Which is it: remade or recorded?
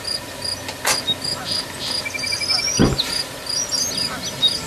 recorded